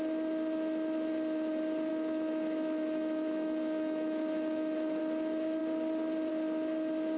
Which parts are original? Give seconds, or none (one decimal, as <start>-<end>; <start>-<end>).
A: 0.0-1.9; 5.0-7.2